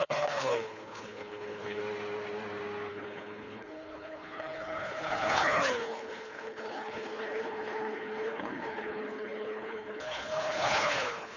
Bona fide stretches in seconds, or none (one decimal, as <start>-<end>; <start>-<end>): 1.8-2.9